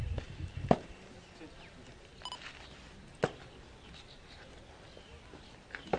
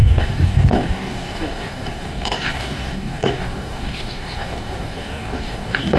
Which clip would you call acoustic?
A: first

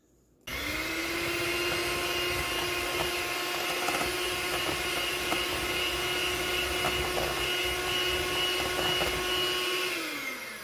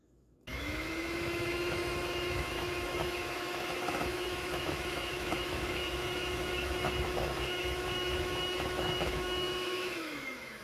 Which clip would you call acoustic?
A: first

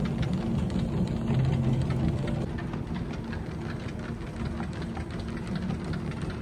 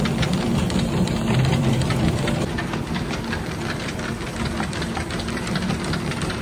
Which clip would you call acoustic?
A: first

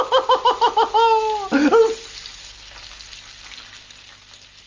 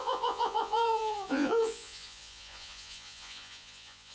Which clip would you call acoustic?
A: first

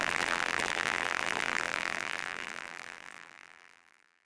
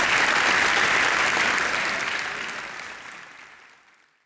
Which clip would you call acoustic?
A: second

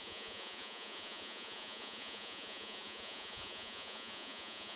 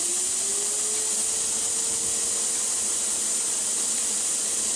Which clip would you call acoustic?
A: second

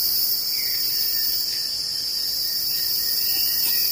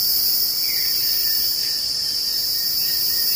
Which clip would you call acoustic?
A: first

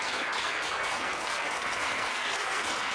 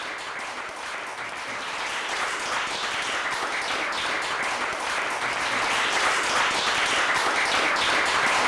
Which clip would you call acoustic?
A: second